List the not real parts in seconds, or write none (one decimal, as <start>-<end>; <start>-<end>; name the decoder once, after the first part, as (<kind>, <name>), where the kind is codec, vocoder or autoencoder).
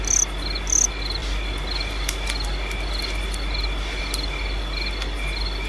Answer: none